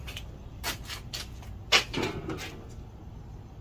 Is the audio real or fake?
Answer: real